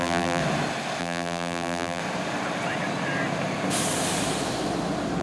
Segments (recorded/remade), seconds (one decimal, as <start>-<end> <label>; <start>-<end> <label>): 0.0-0.4 remade; 0.4-1.0 recorded; 1.0-2.0 remade; 2.0-5.2 recorded